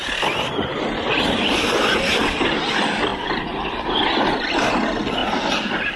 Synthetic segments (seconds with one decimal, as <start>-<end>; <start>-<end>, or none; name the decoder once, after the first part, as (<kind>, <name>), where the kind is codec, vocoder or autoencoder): 0.0-2.2 (vocoder, BigVGAN v2); 3.1-4.7